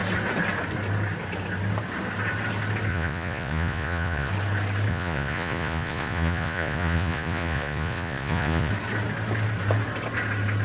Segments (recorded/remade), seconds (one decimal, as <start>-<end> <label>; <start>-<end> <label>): 0.0-2.9 recorded; 2.9-4.3 remade; 4.3-4.9 recorded; 4.9-8.7 remade; 8.7-10.6 recorded